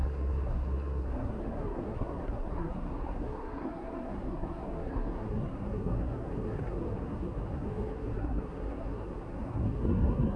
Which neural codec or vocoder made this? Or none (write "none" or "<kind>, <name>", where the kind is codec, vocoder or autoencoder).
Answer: codec, SNAC